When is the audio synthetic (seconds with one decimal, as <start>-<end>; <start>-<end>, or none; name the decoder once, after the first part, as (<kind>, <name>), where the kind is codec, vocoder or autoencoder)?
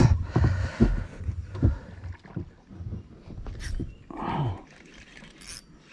none